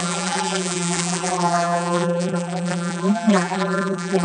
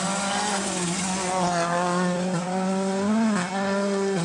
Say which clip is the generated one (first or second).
first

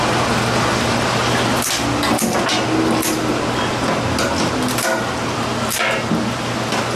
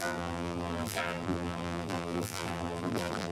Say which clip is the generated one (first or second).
second